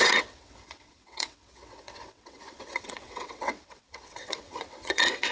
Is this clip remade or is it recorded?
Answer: remade